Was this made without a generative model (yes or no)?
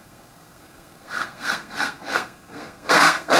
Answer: no